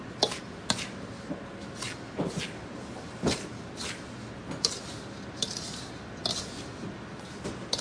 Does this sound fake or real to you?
real